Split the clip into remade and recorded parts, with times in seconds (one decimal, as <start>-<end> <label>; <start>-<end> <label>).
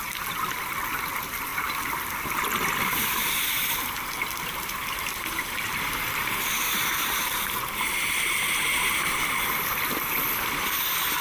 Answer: 0.0-11.2 recorded